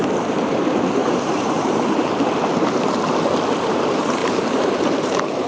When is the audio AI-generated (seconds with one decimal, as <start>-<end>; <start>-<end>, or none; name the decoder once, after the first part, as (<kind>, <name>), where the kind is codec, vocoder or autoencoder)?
1.0-2.2 (vocoder, BigVGAN v2); 4.2-5.5